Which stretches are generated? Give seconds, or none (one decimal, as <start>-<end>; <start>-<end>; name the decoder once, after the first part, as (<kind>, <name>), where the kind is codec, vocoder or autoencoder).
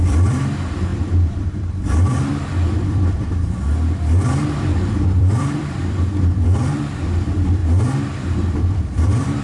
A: 0.0-7.6 (vocoder, BigVGAN v2); 8.6-9.4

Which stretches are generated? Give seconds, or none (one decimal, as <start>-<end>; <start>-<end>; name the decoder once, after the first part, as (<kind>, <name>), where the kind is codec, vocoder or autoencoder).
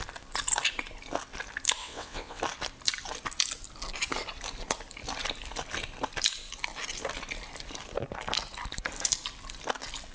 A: 1.8-2.4 (vocoder, WaveNeXt)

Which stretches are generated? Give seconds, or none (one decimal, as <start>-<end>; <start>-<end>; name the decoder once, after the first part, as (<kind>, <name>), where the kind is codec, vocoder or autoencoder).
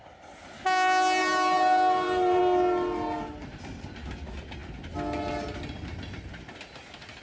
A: 1.2-2.4 (vocoder, BigVGAN v2)